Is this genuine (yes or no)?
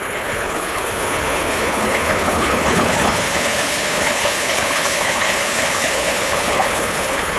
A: no